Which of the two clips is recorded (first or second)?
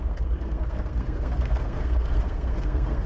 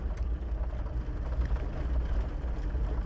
second